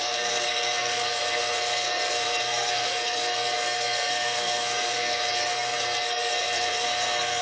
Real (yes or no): no